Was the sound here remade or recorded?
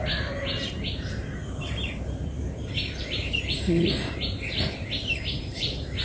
remade